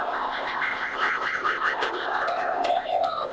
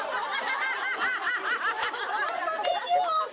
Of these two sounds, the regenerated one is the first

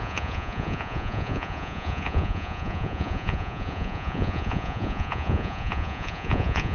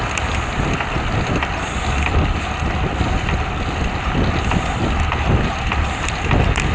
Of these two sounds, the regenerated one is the first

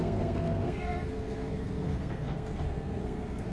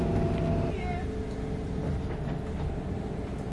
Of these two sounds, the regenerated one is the first